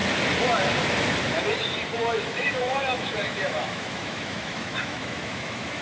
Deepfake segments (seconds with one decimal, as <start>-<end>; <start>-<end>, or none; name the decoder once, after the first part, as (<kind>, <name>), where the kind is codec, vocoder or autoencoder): 2.0-5.8 (autoencoder, DAC-VAE)